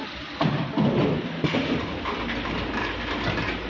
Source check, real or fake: real